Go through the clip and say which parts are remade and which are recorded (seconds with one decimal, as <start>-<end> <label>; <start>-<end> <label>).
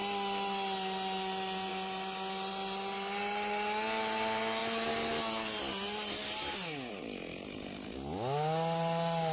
0.0-9.3 recorded